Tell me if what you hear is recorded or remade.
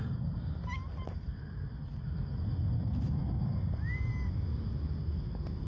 recorded